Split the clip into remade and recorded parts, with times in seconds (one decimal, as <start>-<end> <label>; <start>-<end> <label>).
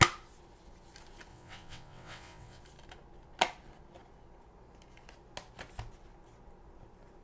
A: 0.0-1.3 recorded; 1.3-2.6 remade; 2.6-7.2 recorded